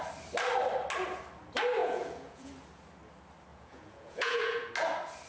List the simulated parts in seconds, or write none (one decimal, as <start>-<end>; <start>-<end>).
1.8-2.5; 3.5-4.7